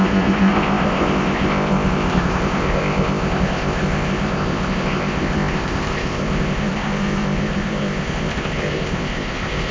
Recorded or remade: remade